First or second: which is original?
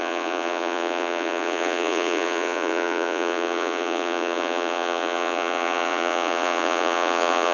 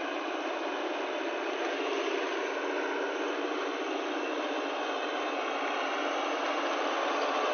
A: second